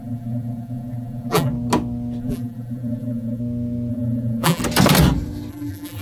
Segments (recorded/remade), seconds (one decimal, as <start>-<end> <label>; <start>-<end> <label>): 0.0-1.5 remade; 1.5-2.2 recorded; 2.2-3.4 remade; 3.4-3.9 recorded; 3.9-4.6 remade; 4.6-5.5 recorded; 5.5-6.0 remade